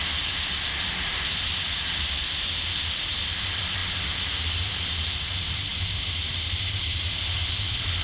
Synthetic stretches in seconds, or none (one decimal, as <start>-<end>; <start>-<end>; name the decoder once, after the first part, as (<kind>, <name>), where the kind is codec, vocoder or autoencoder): 0.0-3.8 (vocoder, BigVGAN v2); 4.4-5.7; 6.2-8.0